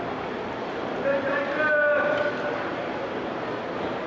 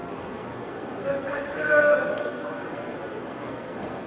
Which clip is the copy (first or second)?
second